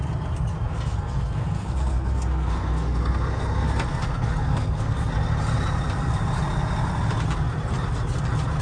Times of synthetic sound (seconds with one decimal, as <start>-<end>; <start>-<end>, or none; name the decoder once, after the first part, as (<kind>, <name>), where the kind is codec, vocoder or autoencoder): 0.7-5.1 (codec, SNAC)